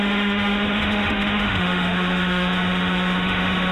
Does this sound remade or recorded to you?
remade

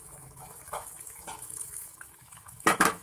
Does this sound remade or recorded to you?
remade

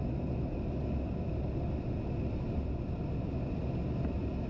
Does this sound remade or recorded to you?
recorded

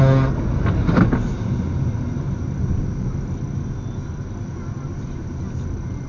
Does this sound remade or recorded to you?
recorded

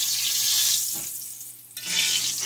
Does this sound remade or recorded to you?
recorded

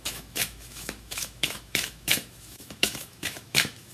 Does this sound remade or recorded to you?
remade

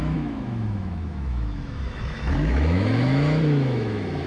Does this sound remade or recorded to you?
remade